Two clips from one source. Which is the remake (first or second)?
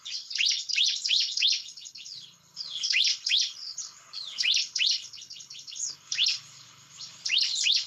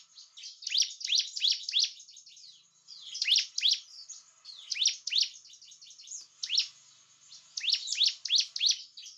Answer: first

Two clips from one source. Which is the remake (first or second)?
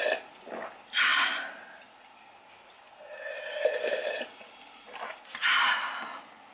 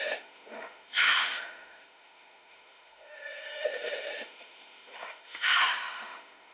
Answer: second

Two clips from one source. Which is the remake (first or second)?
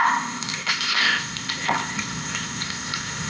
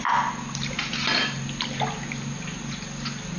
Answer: first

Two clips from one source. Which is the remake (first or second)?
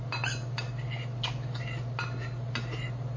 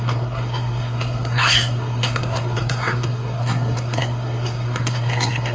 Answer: second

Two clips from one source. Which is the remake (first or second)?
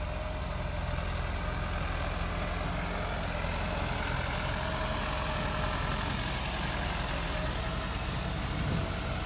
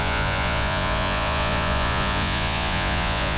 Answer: second